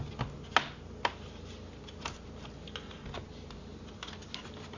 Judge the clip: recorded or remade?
recorded